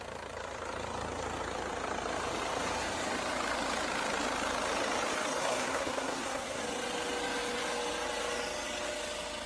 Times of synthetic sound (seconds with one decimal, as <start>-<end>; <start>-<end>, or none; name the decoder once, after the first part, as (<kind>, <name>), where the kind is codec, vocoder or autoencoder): 5.4-6.6 (codec, SNAC)